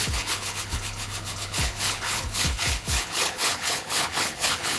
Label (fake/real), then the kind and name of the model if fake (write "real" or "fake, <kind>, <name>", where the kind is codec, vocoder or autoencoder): fake, codec, HILCodec